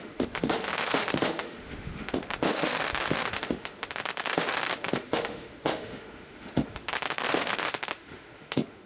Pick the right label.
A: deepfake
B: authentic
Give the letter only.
A